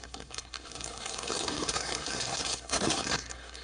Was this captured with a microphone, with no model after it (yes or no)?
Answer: no